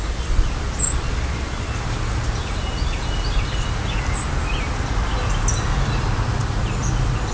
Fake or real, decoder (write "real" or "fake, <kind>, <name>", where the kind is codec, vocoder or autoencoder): real